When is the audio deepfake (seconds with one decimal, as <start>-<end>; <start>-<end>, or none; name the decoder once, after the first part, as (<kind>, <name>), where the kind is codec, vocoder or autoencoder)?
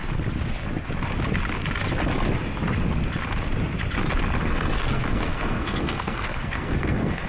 4.4-7.3 (codec, SNAC)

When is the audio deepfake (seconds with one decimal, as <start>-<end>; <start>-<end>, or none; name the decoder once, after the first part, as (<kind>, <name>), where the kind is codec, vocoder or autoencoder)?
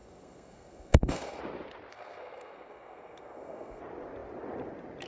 0.0-1.4 (codec, SNAC); 1.9-3.8